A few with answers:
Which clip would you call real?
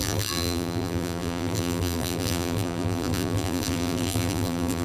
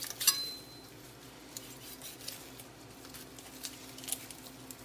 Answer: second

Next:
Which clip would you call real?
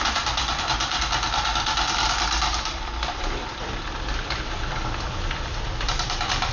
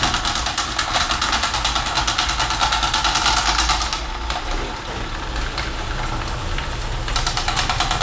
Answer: second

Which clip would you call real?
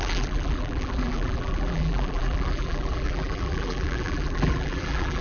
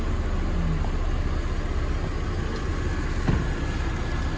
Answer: second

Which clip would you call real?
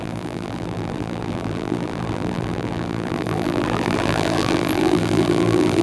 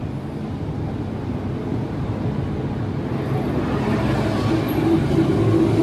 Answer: second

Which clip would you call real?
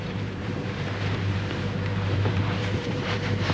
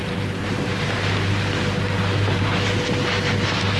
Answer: second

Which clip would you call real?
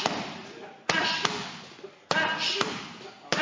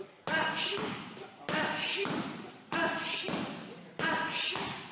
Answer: first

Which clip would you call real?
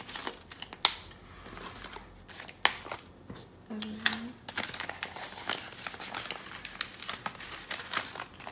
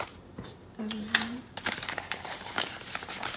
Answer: first